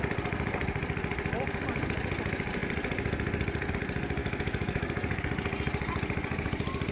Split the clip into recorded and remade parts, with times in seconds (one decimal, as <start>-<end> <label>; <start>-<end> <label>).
0.0-4.2 recorded; 4.2-5.2 remade; 5.2-6.9 recorded